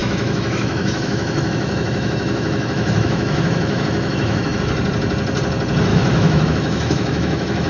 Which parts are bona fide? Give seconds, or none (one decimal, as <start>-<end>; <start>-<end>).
4.6-5.9